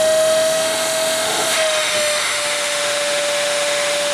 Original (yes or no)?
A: no